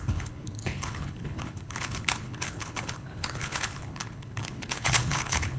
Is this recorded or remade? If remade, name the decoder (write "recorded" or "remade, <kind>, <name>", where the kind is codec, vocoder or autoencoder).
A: remade, codec, HILCodec